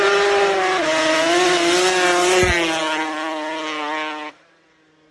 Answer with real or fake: real